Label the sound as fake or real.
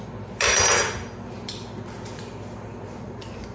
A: real